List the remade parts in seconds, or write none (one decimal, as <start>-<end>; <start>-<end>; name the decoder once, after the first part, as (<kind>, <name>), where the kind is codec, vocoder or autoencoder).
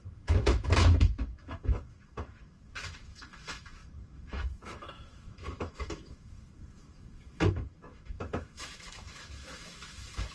0.0-10.3 (autoencoder, DAC-VAE)